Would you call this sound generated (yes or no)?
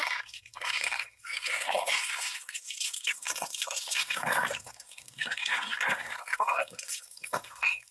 yes